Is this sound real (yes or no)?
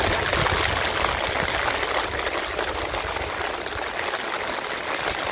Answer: yes